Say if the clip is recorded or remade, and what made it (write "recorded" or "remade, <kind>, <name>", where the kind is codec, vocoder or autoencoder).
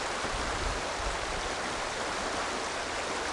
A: recorded